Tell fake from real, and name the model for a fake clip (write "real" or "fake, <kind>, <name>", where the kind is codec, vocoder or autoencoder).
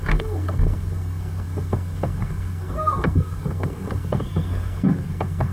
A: fake, codec, SNAC